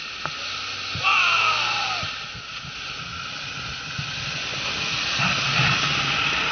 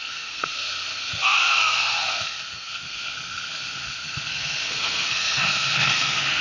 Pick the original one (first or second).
first